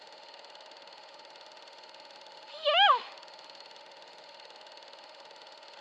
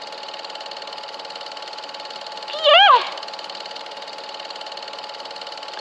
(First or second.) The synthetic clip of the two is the first